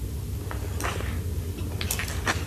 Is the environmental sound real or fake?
real